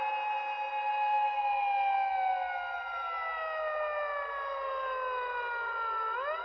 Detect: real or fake real